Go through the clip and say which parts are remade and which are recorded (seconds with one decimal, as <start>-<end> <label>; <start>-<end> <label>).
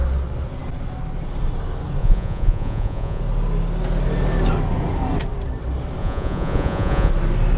0.0-2.0 recorded; 2.0-3.2 remade; 3.2-6.0 recorded; 6.0-7.1 remade; 7.1-7.6 recorded